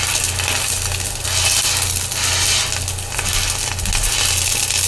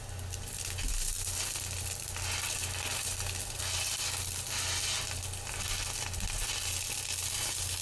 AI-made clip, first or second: second